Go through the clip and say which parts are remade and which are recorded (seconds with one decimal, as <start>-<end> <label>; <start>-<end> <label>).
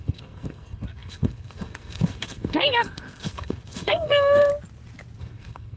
0.0-4.5 remade; 4.5-5.2 recorded; 5.2-5.8 remade